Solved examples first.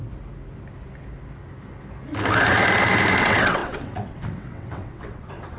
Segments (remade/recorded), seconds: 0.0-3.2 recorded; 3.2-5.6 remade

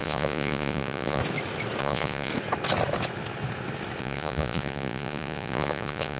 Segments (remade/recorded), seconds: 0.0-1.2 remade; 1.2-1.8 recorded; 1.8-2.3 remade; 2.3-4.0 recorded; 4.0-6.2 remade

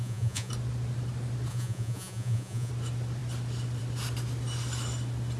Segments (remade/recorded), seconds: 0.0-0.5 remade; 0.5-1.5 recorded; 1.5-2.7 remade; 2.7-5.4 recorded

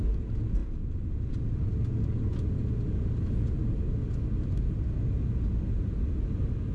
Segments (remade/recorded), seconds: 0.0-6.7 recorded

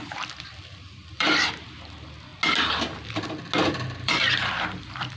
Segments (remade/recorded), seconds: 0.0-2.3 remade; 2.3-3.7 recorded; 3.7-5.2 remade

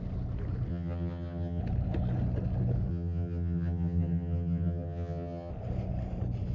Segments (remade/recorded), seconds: 0.0-0.7 recorded; 0.7-1.6 remade; 1.6-2.9 recorded; 2.9-5.5 remade; 5.5-6.5 recorded

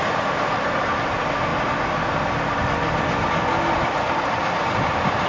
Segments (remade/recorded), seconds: 0.0-1.5 remade; 1.5-4.7 recorded; 4.7-5.3 remade